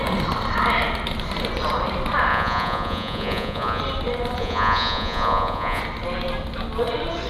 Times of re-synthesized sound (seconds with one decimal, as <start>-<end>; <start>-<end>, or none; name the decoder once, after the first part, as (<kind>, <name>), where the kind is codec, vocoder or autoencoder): 2.3-3.8 (vocoder, Vocos); 4.4-5.8